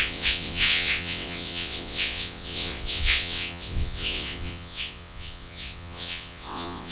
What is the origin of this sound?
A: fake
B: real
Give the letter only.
A